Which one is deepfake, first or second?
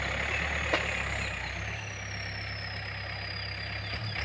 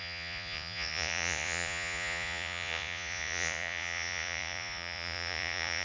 second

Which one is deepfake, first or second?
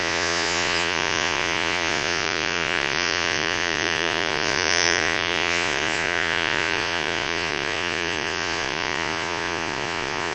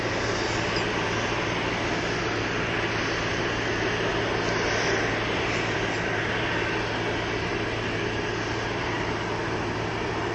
first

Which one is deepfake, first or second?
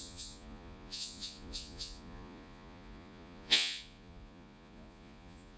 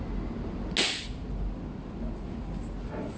first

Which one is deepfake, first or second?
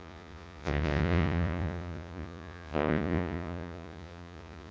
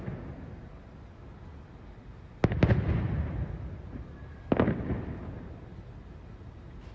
first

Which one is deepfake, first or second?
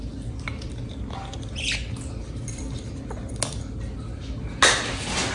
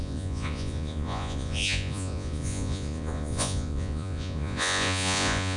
second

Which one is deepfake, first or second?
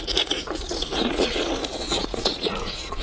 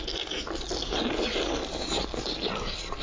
first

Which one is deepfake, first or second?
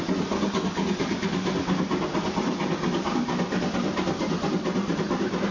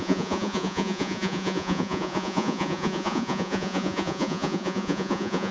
second